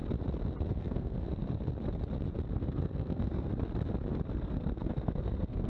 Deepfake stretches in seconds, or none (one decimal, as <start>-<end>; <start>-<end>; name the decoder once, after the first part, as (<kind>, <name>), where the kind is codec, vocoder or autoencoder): 0.7-1.4 (codec, SNAC); 2.6-3.5; 4.4-5.7